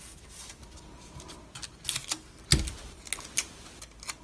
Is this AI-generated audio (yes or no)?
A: no